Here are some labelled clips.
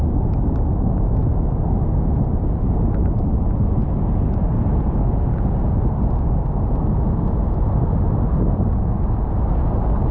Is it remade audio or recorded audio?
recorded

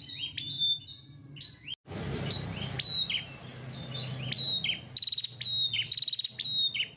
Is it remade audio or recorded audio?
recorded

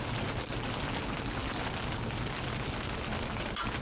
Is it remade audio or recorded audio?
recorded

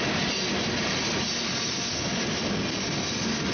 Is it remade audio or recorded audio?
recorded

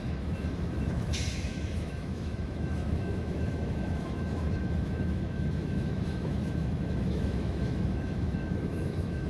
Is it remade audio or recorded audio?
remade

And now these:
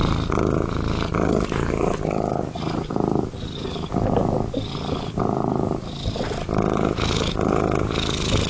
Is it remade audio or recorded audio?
recorded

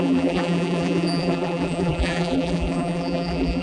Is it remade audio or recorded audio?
remade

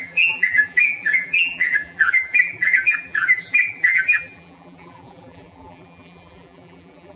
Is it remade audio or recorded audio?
remade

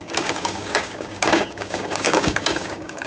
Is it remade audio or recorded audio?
remade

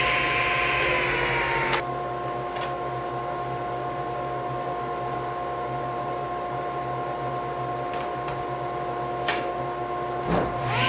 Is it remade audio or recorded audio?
recorded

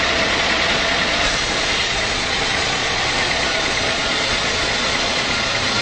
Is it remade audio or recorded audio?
remade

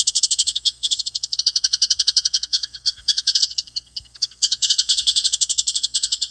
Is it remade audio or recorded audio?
remade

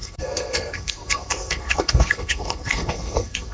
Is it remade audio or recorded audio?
remade